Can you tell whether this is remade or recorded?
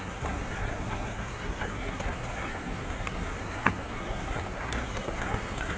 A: remade